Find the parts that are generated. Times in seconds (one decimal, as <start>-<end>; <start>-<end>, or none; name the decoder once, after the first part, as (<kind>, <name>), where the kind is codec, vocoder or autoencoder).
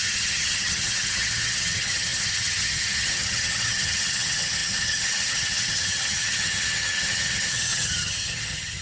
0.0-8.8 (vocoder, HiFi-GAN)